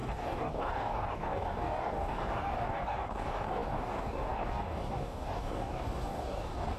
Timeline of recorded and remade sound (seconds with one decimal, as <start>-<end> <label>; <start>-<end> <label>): 0.0-6.8 remade